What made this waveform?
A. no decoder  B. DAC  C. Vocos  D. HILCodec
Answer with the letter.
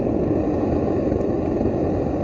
A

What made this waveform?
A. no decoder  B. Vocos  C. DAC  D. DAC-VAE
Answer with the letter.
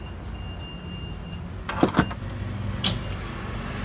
A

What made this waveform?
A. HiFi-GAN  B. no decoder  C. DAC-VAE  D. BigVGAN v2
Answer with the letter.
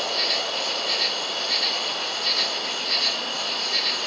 B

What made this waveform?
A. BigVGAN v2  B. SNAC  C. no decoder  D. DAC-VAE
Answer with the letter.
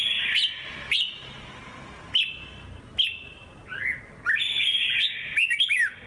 C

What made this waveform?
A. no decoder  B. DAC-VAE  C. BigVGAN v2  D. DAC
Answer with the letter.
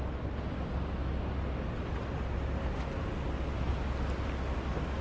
A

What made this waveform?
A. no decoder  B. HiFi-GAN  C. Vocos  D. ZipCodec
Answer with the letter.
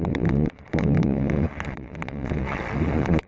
C